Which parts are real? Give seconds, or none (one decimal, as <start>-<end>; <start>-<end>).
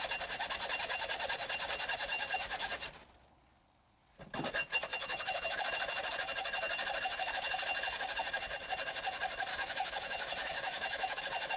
0.0-2.1; 2.7-4.9; 5.6-9.5; 11.2-11.6